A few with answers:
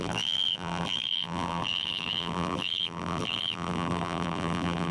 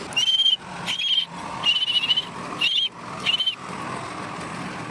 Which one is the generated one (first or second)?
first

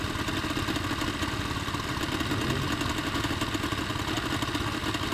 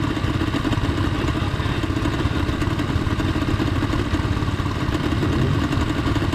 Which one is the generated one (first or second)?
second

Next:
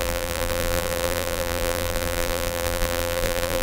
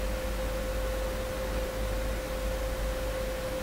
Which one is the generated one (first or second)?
first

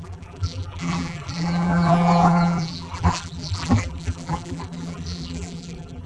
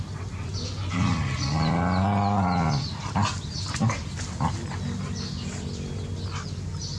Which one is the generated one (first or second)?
first